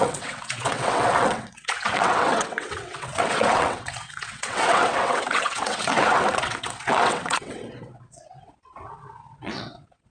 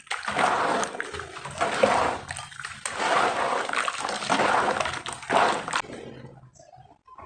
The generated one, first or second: first